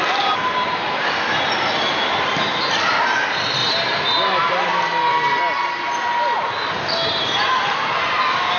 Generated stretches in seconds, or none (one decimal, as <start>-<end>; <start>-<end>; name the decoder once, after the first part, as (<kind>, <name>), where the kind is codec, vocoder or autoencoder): none